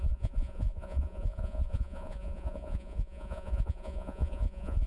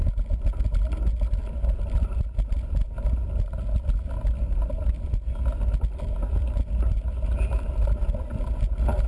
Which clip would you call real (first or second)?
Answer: second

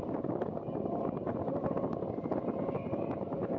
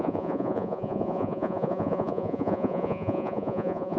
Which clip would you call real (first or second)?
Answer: first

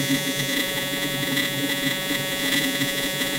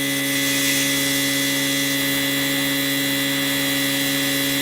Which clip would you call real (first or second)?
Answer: second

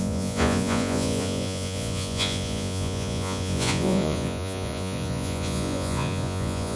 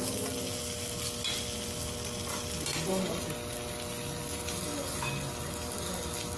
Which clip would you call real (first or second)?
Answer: second